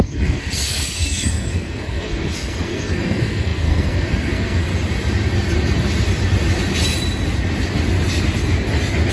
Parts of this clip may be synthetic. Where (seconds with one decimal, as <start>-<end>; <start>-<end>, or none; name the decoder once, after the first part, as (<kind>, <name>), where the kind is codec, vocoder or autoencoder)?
0.0-4.7 (codec, SNAC)